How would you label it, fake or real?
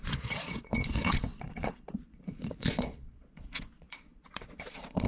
fake